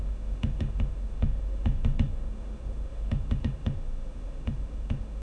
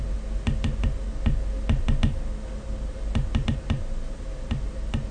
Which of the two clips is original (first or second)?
second